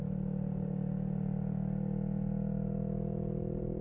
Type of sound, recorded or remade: recorded